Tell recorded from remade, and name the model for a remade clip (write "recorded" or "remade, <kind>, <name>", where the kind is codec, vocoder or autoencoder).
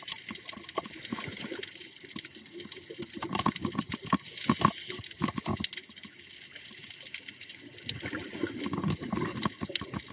recorded